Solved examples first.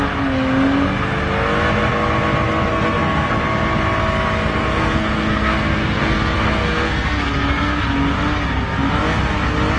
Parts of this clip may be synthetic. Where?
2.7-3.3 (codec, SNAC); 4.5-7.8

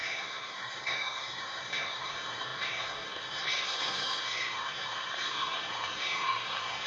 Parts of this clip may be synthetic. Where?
0.0-6.9 (codec, SNAC)

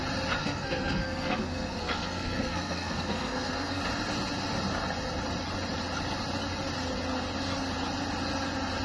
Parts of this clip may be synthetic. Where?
0.4-3.8 (codec, SNAC)